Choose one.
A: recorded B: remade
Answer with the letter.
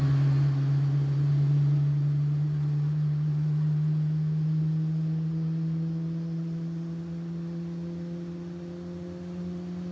A